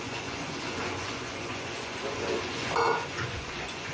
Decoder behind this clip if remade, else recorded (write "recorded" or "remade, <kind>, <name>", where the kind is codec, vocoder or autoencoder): remade, vocoder, Vocos